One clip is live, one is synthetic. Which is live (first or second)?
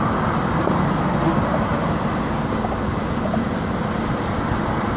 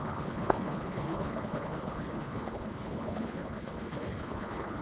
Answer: first